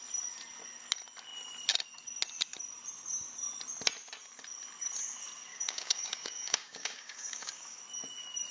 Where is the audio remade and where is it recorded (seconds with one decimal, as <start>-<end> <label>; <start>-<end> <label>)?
0.0-5.5 recorded; 5.5-7.8 remade; 7.8-8.5 recorded